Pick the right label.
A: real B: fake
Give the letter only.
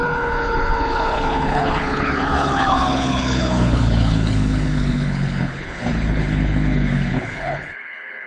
B